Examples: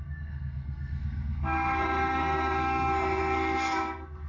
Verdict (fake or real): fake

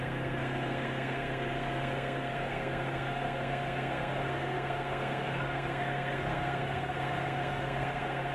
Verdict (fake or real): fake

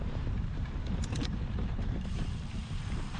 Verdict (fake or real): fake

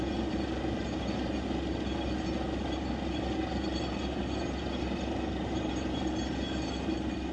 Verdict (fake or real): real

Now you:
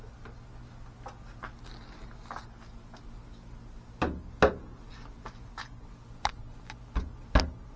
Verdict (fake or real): real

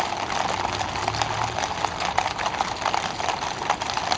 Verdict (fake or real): real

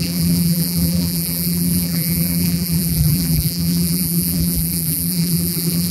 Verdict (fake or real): fake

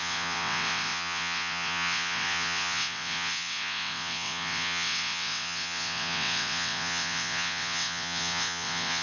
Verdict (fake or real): fake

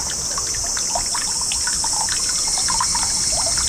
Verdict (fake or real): real